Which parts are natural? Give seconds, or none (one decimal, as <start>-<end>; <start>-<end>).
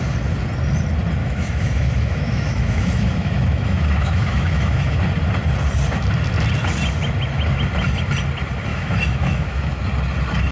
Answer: 0.0-1.2; 5.0-8.7; 9.8-10.5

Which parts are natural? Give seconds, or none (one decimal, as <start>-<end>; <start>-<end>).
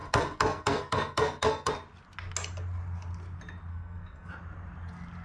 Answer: 1.7-3.7; 4.3-5.2